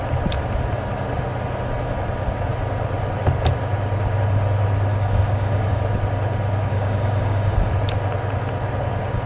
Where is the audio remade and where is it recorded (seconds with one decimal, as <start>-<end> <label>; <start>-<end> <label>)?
0.0-4.9 recorded; 4.9-5.8 remade; 5.8-6.7 recorded; 6.7-7.7 remade; 7.7-9.3 recorded